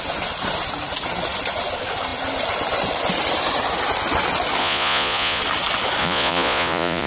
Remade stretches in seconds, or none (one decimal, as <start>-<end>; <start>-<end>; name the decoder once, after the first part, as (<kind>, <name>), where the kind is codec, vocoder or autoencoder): 4.6-5.4 (vocoder, Vocos); 6.0-7.1